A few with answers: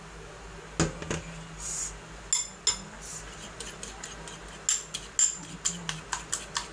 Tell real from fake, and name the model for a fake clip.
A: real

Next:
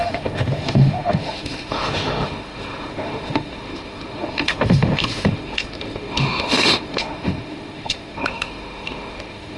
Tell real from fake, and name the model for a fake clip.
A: fake, autoencoder, DAC-VAE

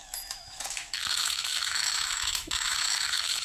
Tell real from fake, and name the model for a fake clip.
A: fake, autoencoder, DAC-VAE